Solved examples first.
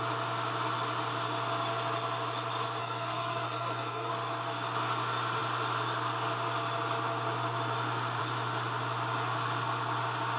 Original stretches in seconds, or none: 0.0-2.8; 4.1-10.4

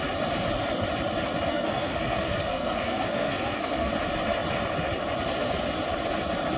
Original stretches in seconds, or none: 0.0-1.5; 3.9-6.6

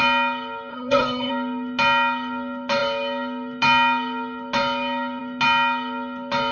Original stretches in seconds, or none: 0.0-0.7; 1.3-6.5

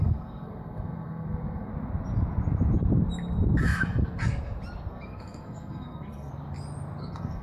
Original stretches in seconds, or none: 1.7-4.9; 6.3-7.0